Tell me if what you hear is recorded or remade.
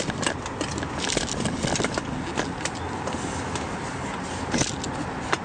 recorded